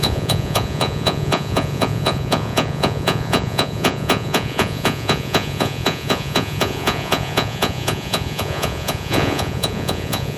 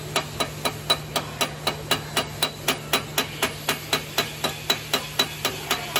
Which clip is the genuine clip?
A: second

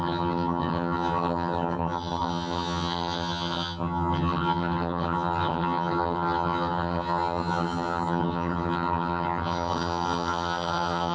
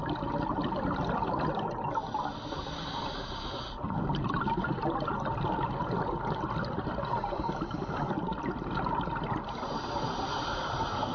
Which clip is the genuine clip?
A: second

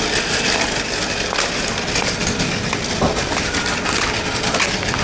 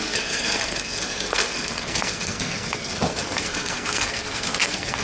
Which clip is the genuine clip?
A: first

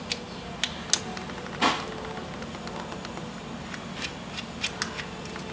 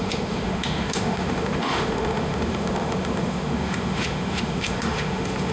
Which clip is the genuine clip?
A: first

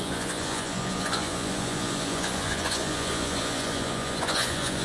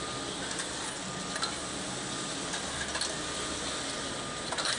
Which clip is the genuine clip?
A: second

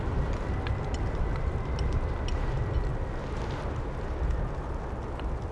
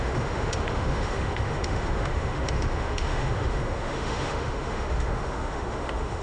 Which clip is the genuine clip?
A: first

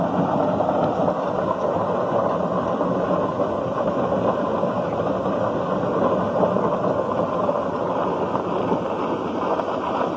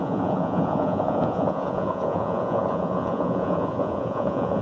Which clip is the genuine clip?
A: first